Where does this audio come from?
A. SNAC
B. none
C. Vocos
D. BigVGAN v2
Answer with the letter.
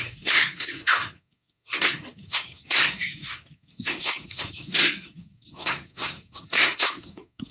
A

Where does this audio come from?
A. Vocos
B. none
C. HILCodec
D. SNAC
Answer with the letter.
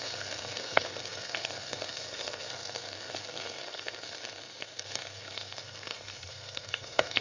D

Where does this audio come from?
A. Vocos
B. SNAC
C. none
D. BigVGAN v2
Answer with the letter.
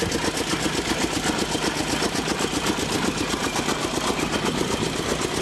C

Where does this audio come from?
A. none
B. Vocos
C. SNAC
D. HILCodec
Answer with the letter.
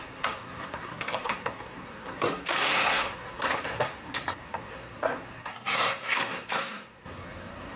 C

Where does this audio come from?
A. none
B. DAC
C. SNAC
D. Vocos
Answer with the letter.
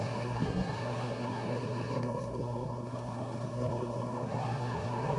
C